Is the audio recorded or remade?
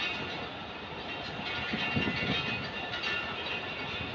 recorded